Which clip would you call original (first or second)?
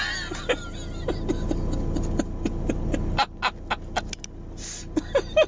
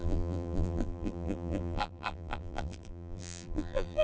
first